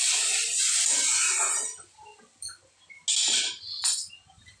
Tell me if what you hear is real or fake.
real